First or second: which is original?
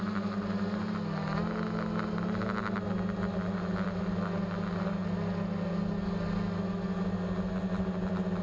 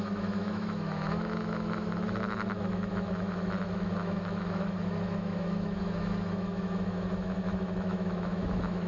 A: first